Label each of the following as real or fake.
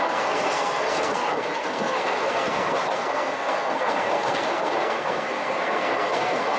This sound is fake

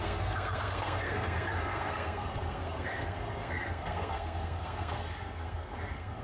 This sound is fake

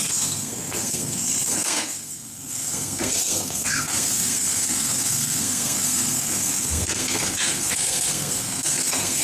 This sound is fake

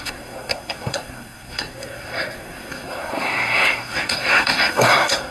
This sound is fake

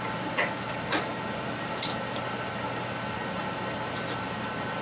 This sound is real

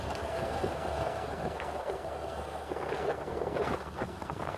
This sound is fake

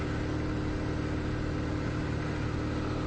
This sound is real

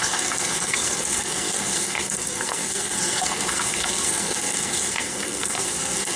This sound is fake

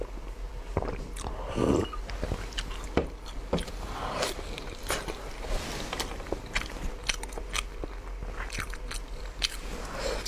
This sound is real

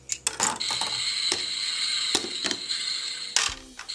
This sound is real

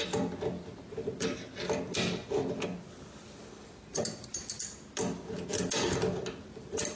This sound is real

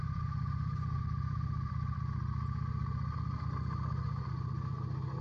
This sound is real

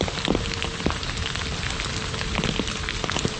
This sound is real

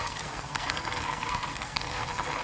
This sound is fake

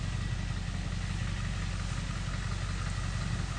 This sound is real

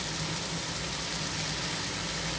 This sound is real